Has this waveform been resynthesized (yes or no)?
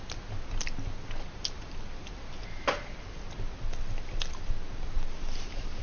no